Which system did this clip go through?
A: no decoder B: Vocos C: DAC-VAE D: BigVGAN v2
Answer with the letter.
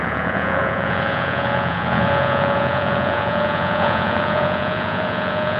B